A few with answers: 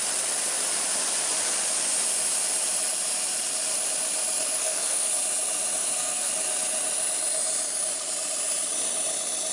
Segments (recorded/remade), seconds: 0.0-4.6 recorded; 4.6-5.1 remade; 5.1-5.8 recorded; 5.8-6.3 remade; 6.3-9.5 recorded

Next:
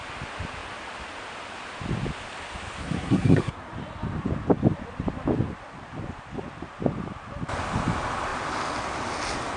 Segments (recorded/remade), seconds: 0.0-2.8 recorded; 2.8-3.7 remade; 3.7-9.6 recorded

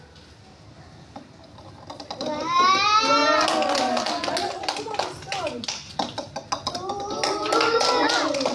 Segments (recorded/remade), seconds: 0.0-8.5 recorded